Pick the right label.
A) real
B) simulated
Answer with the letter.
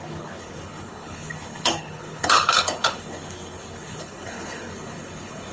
B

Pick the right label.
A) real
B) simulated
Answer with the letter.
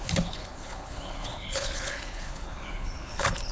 B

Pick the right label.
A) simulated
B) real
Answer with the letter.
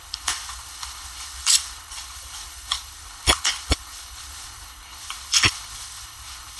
A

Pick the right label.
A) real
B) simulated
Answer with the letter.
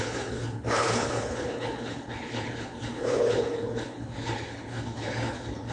B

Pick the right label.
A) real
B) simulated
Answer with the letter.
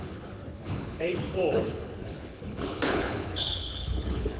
B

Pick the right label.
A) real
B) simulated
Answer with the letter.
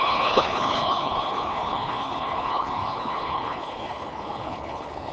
B